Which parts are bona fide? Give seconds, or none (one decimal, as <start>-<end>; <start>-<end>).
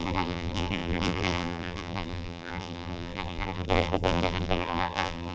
none